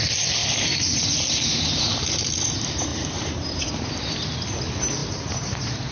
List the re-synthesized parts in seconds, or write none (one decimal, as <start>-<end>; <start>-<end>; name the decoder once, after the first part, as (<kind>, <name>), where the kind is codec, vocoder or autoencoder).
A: 0.4-1.0 (vocoder, BigVGAN v2); 2.9-3.7; 5.0-5.9